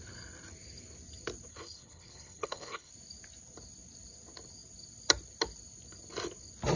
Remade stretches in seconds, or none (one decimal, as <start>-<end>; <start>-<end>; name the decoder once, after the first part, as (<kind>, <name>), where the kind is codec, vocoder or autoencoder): 1.5-2.9 (codec, HILCodec)